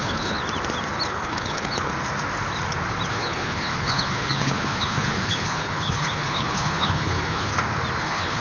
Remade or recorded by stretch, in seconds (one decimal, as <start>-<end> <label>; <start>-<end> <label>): 0.0-0.4 remade; 0.4-1.1 recorded; 1.1-1.9 remade; 1.9-3.1 recorded; 3.1-7.5 remade; 7.5-8.0 recorded; 8.0-8.4 remade